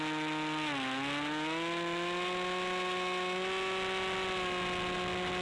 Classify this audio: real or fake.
real